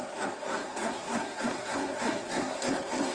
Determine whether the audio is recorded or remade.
remade